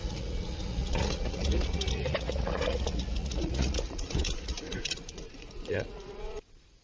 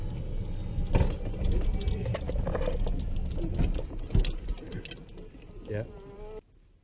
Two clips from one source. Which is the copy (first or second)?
first